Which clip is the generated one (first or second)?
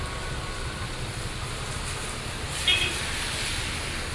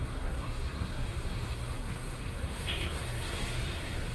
second